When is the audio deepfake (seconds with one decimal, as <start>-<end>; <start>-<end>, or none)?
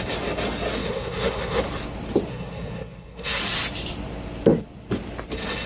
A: 0.8-1.6; 2.3-3.4